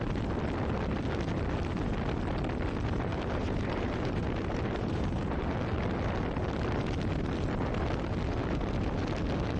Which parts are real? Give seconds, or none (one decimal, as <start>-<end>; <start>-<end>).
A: 0.0-3.1; 5.5-9.6

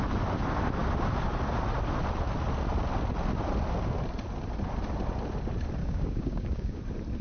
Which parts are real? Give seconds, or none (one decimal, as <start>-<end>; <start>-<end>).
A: 0.0-5.8; 6.8-7.2

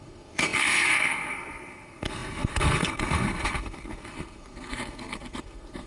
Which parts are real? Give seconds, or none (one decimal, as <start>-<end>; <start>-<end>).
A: none

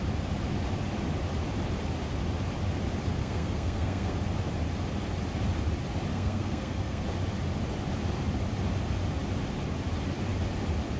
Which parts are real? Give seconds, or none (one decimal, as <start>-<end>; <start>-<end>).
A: 0.0-3.2; 4.1-6.1; 7.0-11.0

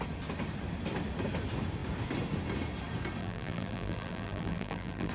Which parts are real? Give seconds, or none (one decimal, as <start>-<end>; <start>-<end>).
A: 0.0-3.2

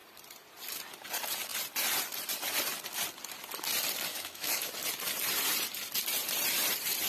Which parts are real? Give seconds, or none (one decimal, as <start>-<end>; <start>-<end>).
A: 0.0-4.1; 4.7-7.1

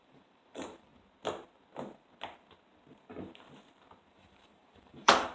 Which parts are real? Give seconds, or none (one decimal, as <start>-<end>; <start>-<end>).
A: 0.9-4.1

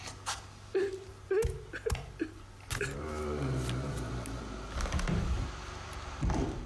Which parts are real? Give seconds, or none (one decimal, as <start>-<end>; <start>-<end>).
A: 1.1-5.1